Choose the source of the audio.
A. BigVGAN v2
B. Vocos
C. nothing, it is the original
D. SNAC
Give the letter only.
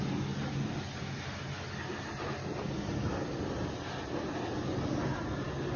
C